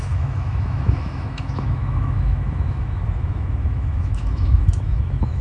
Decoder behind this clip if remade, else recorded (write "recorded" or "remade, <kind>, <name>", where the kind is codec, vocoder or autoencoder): remade, autoencoder, DAC-VAE